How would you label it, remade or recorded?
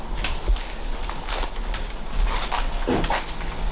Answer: recorded